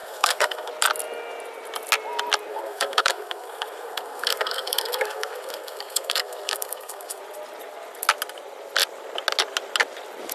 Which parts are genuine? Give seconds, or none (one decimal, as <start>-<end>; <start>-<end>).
0.7-2.5; 7.2-10.3